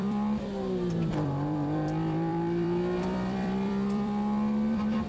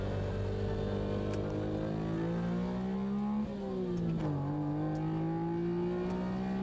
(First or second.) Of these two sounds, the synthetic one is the first